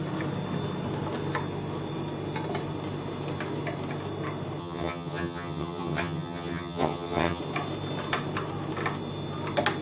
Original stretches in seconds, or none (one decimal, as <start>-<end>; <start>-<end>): 0.0-4.6; 7.4-9.8